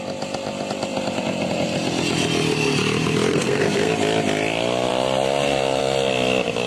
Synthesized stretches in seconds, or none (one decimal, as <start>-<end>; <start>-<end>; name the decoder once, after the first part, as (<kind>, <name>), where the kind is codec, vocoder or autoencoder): 3.3-3.9 (codec, SNAC)